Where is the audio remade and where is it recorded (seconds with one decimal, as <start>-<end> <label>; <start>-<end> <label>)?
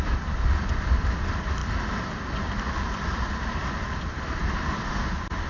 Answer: 0.0-5.5 recorded